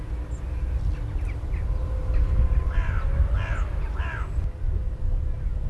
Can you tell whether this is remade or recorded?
recorded